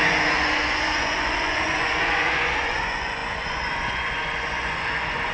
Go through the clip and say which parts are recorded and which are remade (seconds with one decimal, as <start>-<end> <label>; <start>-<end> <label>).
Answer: 0.0-5.3 remade